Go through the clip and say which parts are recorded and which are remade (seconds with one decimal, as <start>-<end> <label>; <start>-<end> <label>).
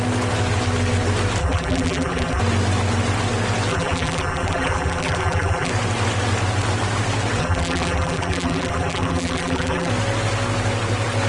0.0-1.4 recorded; 1.4-2.4 remade; 2.4-3.7 recorded; 3.7-5.7 remade; 5.7-7.4 recorded; 7.4-9.9 remade; 9.9-11.3 recorded